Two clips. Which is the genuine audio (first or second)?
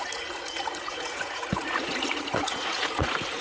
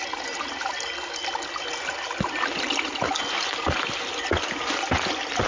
second